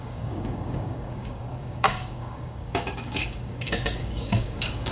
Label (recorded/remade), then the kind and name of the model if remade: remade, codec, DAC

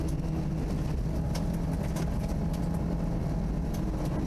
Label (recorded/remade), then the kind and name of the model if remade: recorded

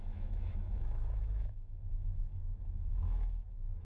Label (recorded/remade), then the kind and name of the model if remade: remade, autoencoder, DAC-VAE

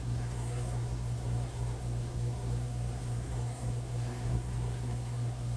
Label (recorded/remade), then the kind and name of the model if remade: remade, codec, SNAC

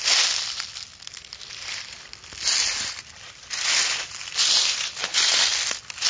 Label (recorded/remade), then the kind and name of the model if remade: recorded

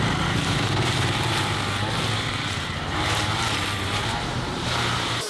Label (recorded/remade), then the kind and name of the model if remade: remade, vocoder, BigVGAN v2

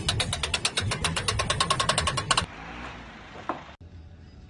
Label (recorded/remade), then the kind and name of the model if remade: recorded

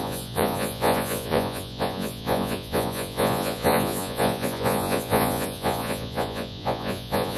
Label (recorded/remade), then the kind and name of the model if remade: remade, vocoder, Vocos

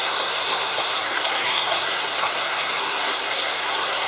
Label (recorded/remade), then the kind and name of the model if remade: remade, codec, SNAC